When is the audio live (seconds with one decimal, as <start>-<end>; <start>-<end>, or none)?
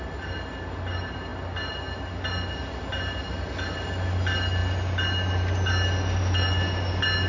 0.0-7.3